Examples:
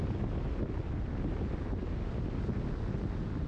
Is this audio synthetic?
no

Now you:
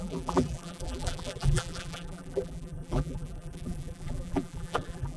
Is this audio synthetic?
yes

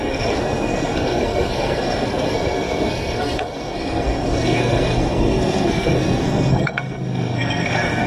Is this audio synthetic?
yes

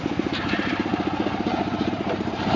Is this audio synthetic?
yes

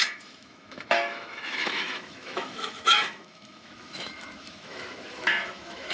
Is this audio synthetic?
yes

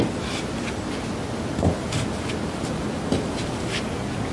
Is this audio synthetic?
no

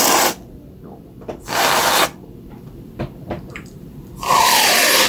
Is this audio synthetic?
yes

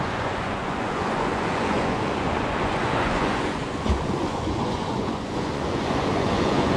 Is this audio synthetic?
yes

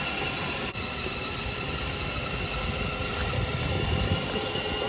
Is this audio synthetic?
no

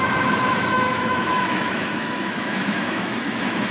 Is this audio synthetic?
yes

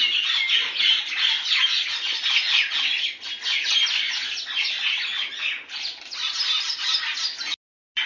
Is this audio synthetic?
no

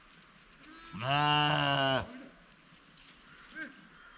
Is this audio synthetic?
no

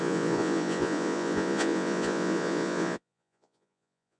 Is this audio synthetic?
yes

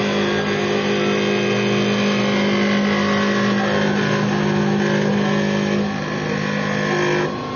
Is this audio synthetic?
no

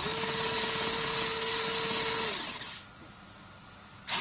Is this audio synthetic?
no